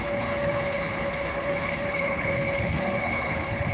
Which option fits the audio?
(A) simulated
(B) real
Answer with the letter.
A